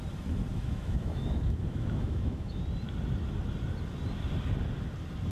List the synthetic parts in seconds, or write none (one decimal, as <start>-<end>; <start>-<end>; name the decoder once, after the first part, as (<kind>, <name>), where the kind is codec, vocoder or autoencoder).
0.5-2.6 (autoencoder, DAC-VAE)